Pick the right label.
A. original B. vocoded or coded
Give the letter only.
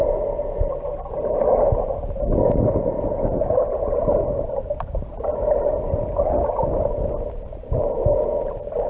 A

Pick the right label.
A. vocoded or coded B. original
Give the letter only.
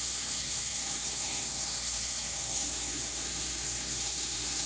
A